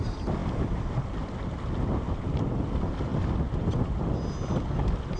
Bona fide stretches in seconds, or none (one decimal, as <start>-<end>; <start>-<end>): 0.0-0.4; 0.9-5.2